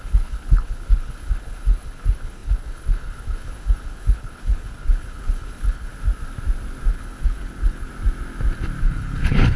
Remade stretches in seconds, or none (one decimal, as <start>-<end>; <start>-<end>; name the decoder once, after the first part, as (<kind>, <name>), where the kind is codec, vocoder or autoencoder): 0.0-5.9 (codec, HILCodec); 6.9-7.9; 8.8-9.6